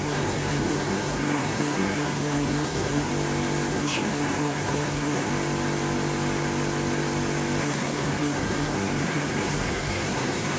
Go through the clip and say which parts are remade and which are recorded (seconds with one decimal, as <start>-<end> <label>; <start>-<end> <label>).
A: 0.0-3.1 remade; 3.1-3.7 recorded; 3.7-5.3 remade; 5.3-7.6 recorded; 7.6-10.6 remade